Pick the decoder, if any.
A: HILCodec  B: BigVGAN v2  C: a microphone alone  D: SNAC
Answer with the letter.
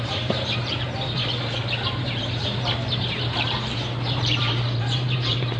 B